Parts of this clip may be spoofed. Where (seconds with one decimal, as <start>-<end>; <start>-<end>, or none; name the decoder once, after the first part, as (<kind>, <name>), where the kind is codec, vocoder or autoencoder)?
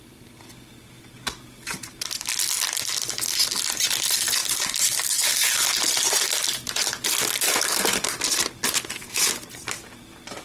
none